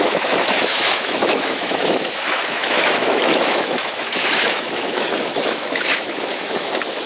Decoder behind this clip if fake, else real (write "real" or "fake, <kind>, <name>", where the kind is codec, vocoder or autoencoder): fake, autoencoder, DAC-VAE